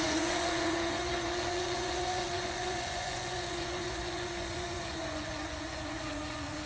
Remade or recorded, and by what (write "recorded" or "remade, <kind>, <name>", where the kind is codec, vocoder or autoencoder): remade, vocoder, Vocos